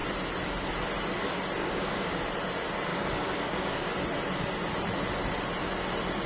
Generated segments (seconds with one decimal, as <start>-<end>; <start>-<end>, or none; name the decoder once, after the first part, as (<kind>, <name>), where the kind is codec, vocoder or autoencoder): 1.6-2.2 (codec, DAC); 2.9-3.9